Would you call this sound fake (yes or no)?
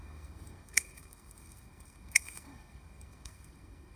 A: yes